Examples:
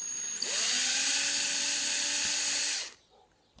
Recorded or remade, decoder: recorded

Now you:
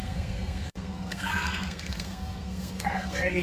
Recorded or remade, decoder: remade, codec, SNAC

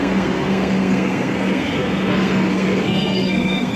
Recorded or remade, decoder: remade, codec, SNAC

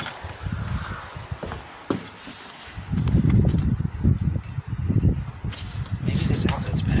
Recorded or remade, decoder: recorded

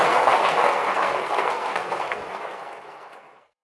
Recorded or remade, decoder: remade, codec, SNAC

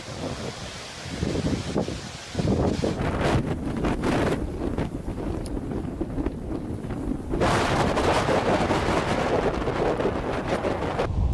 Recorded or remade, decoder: recorded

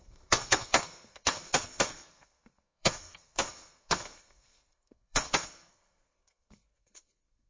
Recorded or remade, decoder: remade, codec, SNAC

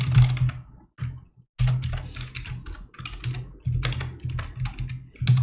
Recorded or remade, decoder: recorded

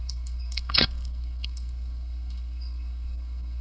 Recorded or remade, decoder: remade, codec, SNAC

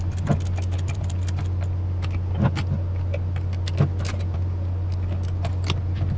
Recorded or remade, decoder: recorded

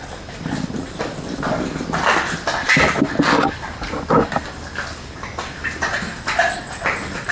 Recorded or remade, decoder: recorded